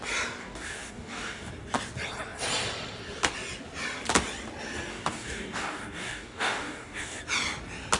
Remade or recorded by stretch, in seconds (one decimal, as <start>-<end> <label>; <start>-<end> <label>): 0.0-0.4 recorded; 0.4-1.5 remade; 1.5-4.9 recorded; 4.9-7.2 remade; 7.2-8.0 recorded